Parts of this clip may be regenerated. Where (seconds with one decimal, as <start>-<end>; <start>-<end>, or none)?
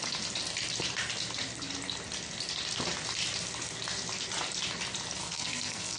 5.2-6.0